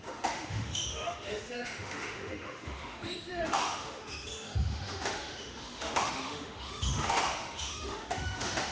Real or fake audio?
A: fake